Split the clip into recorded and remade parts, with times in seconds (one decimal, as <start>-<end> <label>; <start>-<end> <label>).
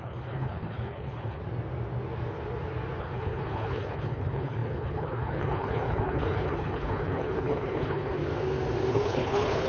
0.0-1.4 remade; 1.4-3.0 recorded; 3.0-8.2 remade; 8.2-8.9 recorded; 8.9-9.7 remade